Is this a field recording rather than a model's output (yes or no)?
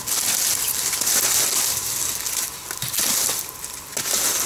yes